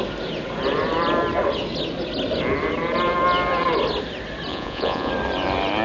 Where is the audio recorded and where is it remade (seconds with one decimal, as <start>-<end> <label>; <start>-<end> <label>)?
0.0-4.5 recorded; 4.5-5.1 remade; 5.1-5.8 recorded